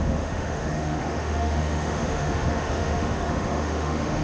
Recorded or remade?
remade